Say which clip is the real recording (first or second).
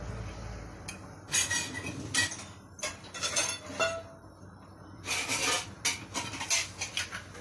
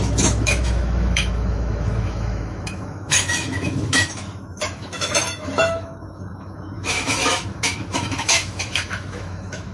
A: first